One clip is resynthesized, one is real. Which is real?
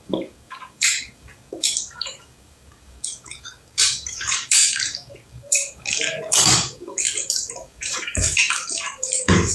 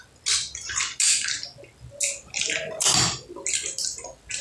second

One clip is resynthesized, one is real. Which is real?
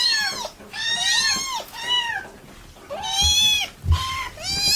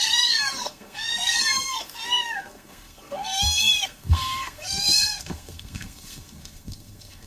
first